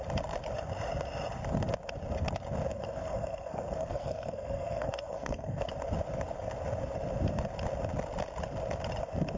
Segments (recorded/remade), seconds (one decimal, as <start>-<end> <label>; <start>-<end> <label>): 0.0-2.7 recorded; 2.7-5.7 remade; 5.7-9.4 recorded